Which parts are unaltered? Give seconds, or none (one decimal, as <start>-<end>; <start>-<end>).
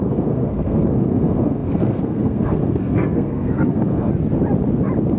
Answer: 4.1-5.2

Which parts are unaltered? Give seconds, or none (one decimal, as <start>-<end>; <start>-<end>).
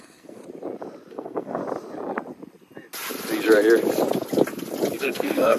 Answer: 0.4-1.1; 1.6-5.0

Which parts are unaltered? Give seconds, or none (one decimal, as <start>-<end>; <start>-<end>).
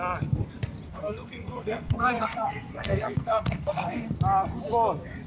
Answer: 0.0-0.9; 4.1-5.3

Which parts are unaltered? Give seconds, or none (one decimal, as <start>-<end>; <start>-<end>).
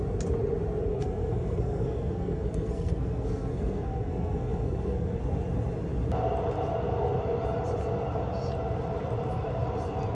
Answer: 0.0-0.9; 5.2-10.1